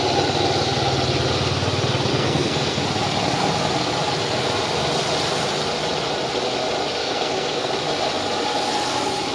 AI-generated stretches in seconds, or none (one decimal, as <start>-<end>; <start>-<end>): 2.1-2.8; 7.0-7.7

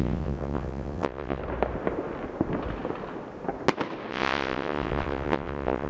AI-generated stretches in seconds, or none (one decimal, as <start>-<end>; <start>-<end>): 0.0-1.4; 4.1-5.9

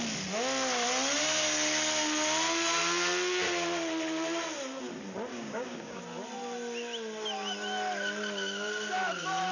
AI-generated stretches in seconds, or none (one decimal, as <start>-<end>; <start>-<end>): 5.3-6.0

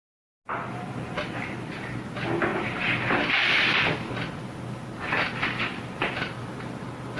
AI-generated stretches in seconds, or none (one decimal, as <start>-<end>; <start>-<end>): 2.5-4.1

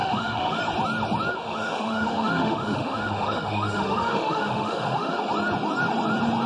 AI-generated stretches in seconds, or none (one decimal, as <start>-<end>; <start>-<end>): 0.0-0.6; 1.3-5.2